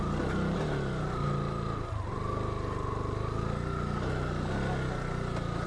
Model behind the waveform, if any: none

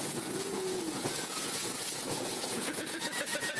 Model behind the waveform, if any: vocoder, Vocos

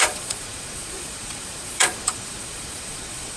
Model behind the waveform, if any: vocoder, Vocos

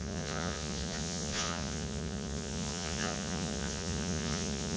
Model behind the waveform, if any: vocoder, Vocos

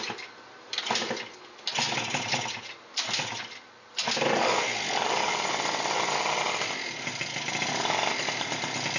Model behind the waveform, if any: none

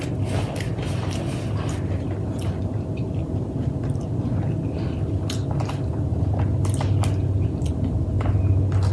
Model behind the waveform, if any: none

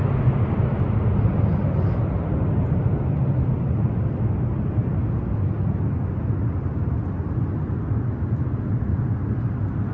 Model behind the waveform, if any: none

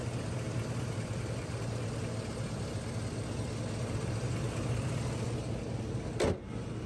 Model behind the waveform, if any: none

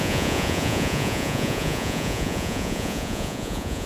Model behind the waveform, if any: vocoder, Vocos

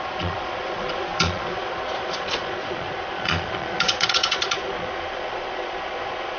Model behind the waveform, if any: vocoder, Vocos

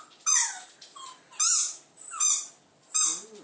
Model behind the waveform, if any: none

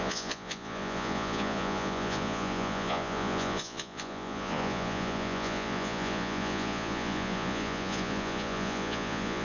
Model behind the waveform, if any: vocoder, Vocos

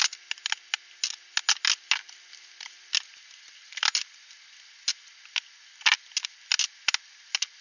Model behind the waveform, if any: none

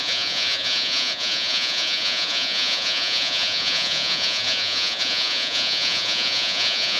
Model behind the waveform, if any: vocoder, Vocos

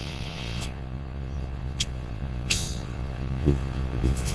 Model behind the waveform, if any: vocoder, Vocos